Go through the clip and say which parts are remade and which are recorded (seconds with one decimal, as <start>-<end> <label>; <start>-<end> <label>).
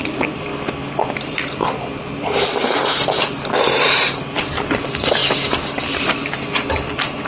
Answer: 0.0-0.5 remade; 0.5-1.1 recorded; 1.1-5.2 remade; 5.2-6.0 recorded; 6.0-7.3 remade